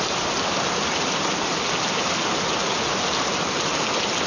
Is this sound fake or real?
real